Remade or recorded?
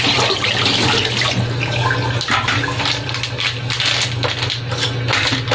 recorded